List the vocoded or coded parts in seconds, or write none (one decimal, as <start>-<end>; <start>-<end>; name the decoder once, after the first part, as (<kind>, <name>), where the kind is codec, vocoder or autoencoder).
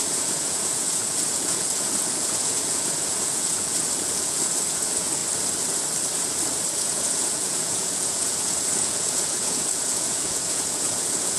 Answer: 0.0-5.2 (vocoder, Vocos); 6.8-11.4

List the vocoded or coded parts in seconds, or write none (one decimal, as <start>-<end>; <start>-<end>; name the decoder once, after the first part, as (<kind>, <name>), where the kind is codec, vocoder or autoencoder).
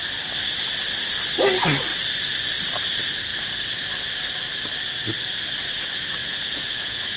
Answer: 6.2-7.2 (vocoder, Vocos)